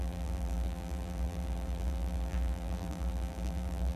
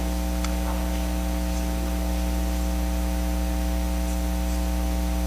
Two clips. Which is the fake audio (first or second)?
first